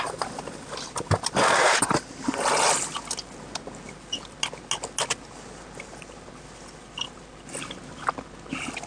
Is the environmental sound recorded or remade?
recorded